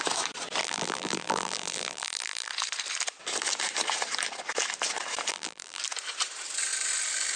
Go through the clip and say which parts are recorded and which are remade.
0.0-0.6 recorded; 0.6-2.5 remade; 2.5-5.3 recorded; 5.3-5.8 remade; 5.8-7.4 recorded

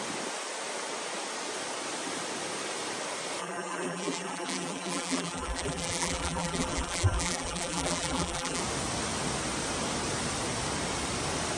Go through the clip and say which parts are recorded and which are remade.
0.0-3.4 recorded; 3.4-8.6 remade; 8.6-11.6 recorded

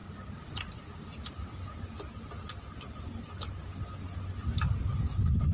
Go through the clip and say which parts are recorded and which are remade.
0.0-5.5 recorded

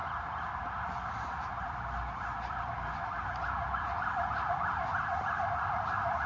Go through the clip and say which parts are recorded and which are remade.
0.0-6.3 recorded